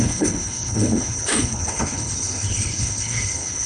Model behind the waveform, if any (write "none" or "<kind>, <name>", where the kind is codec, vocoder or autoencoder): codec, HILCodec